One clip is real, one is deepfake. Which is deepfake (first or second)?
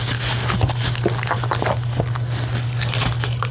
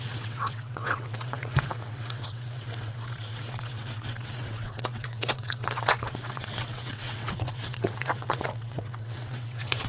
second